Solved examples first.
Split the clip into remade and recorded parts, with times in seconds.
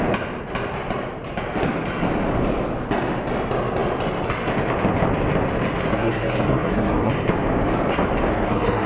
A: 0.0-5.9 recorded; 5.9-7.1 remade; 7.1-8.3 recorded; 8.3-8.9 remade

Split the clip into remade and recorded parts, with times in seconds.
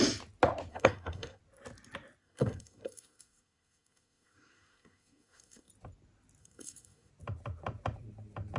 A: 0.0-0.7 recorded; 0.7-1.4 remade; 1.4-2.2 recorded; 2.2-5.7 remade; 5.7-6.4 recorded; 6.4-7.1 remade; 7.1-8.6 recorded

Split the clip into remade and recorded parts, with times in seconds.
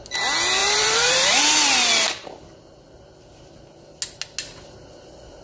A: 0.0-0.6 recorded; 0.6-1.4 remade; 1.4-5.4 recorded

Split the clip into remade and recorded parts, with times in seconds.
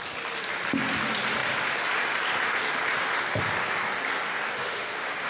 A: 0.0-4.6 recorded; 4.6-5.3 remade